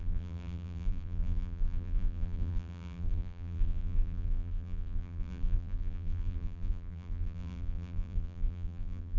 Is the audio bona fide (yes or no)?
no